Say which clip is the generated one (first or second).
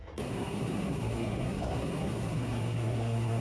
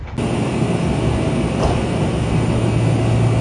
first